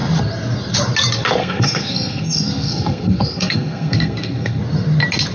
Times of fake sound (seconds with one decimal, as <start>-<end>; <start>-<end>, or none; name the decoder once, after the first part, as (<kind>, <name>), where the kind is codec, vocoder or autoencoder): 1.4-4.6 (codec, SNAC)